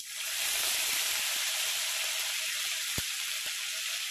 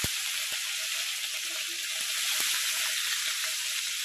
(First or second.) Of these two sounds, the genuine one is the second